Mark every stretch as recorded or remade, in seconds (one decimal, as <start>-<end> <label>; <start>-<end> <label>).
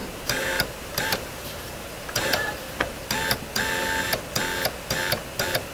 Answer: 0.0-3.1 remade; 3.1-5.7 recorded